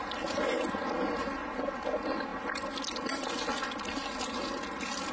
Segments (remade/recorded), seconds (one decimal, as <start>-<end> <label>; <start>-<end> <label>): 0.0-5.1 recorded